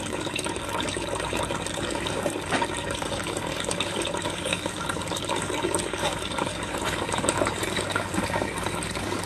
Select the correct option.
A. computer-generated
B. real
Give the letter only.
A